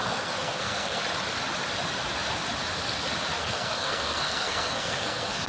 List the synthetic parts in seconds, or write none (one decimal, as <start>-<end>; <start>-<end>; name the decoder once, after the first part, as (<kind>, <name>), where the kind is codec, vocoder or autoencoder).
0.0-1.0 (codec, SNAC); 3.4-5.5